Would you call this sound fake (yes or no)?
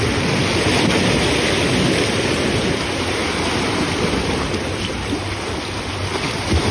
no